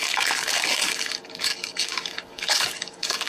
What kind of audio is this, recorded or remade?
remade